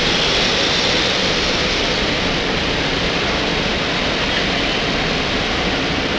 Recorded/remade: remade